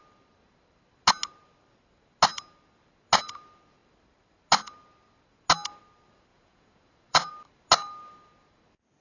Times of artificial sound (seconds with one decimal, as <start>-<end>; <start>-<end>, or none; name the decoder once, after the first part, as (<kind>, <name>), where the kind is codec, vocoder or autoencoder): 6.3-7.3 (vocoder, Vocos)